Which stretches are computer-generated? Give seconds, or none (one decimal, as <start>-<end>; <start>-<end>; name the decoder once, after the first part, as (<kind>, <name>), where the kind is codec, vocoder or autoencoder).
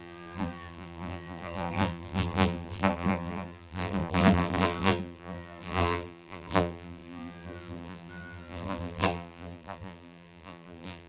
0.0-11.1 (vocoder, BigVGAN v2)